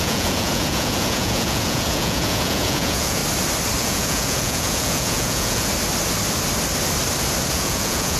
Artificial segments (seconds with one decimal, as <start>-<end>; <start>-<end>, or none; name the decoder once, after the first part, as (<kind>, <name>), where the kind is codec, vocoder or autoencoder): 0.0-3.2 (vocoder, Vocos); 3.8-5.7; 7.5-8.2